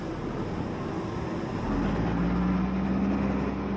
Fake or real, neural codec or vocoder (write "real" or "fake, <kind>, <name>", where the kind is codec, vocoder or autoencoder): real